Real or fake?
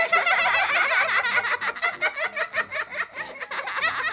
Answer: real